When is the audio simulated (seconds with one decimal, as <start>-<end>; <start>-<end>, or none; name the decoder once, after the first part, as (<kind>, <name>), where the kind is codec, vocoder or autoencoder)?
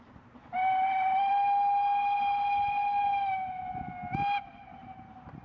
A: 0.0-1.3 (vocoder, BigVGAN v2); 4.5-5.4